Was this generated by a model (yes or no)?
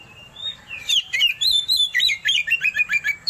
yes